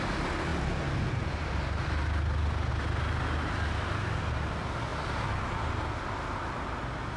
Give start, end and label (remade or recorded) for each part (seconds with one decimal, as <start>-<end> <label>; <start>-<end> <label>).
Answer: 0.0-7.2 recorded